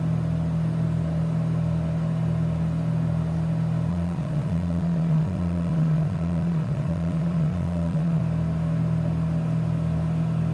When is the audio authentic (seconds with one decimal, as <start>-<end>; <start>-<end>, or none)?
0.0-3.9; 8.2-10.5